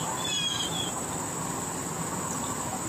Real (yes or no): yes